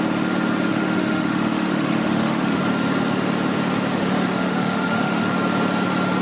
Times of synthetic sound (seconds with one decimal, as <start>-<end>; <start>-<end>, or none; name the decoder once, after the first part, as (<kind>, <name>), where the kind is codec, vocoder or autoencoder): 0.7-2.6 (autoencoder, DAC-VAE); 4.0-5.3